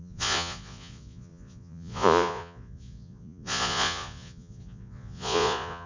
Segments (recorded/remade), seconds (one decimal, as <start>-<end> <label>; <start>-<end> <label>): 0.0-5.9 remade